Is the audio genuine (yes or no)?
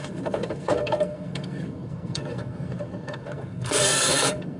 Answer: no